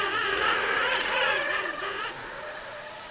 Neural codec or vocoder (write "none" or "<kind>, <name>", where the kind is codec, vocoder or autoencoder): vocoder, Vocos